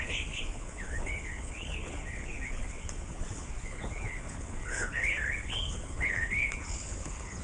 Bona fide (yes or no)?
no